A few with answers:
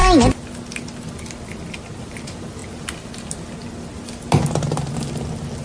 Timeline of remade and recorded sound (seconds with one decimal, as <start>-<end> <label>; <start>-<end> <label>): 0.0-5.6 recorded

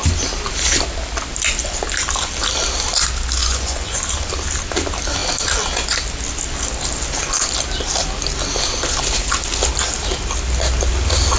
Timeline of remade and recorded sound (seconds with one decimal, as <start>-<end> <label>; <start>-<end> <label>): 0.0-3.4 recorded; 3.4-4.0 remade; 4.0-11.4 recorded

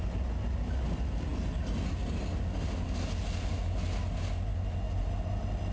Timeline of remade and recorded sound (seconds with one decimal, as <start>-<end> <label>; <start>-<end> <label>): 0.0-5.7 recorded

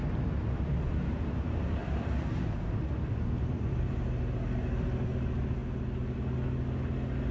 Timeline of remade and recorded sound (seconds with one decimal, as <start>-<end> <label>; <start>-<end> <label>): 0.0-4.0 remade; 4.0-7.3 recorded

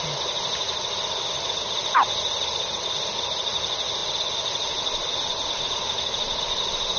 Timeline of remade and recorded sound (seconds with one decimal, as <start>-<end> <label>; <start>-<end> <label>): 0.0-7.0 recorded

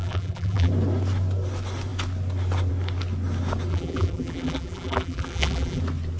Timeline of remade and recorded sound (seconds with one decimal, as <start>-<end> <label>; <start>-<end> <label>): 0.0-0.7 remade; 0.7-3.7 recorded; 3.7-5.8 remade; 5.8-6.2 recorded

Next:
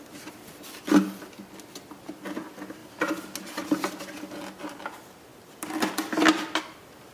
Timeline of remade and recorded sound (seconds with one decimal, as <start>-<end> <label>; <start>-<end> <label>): 0.0-7.1 recorded

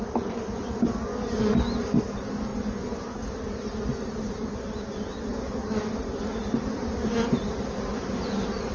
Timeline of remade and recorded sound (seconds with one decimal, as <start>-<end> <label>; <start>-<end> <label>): 0.0-8.7 recorded